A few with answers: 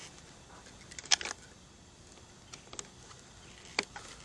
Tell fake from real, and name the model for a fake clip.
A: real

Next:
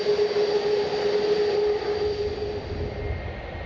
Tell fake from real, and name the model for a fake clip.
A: real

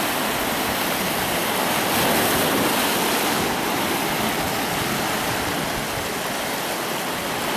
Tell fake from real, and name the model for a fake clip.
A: real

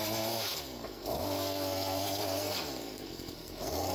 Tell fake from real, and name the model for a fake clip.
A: fake, codec, SNAC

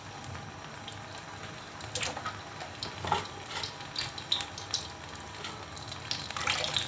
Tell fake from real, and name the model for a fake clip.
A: real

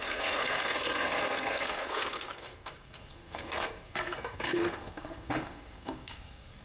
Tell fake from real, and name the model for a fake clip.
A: fake, codec, SNAC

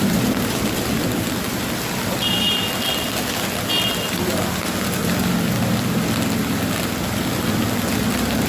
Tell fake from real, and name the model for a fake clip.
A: real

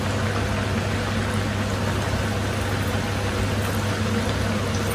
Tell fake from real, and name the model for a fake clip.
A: real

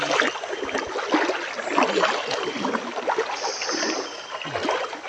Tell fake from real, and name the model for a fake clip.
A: real